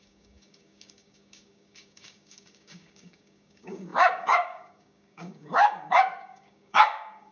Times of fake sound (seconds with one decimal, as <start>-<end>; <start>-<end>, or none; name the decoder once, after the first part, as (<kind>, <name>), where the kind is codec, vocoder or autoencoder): 0.0-7.3 (codec, DAC)